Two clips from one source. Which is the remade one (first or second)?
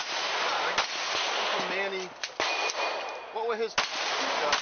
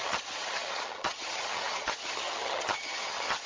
second